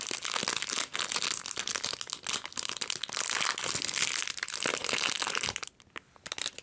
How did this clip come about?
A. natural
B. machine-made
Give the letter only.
A